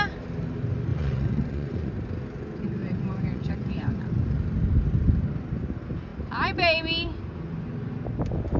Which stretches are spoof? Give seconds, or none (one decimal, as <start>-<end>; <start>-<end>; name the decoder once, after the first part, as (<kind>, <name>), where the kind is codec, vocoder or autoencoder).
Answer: 0.9-1.9 (vocoder, Vocos); 2.8-4.0